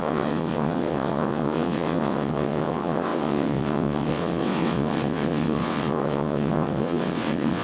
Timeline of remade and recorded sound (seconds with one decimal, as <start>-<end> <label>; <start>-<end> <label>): 0.0-7.6 remade